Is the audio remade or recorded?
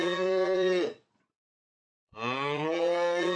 remade